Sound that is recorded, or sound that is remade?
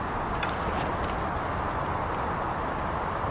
recorded